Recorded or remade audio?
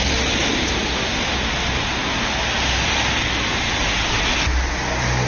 recorded